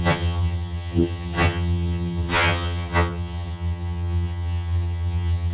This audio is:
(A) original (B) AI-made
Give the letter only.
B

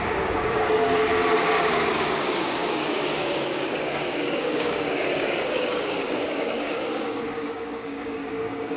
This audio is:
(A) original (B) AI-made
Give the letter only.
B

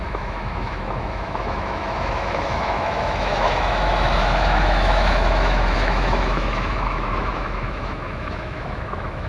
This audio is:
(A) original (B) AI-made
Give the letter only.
B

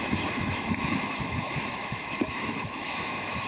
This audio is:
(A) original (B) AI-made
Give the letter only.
B